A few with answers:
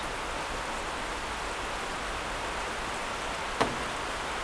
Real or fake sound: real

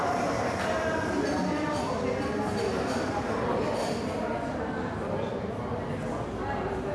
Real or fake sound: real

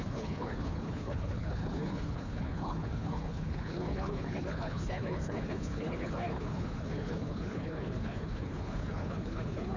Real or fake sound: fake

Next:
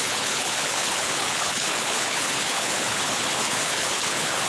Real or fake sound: fake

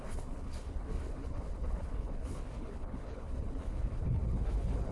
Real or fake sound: fake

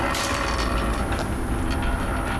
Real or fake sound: real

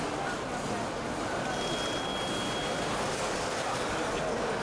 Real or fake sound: real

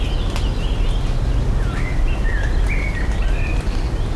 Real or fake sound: real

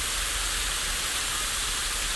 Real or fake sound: real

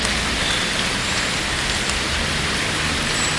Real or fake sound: real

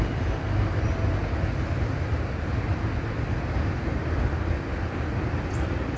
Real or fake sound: real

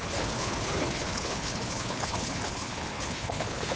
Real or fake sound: fake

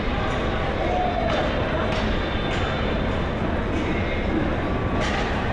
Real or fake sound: real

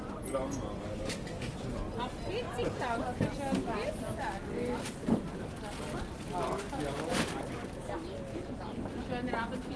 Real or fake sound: real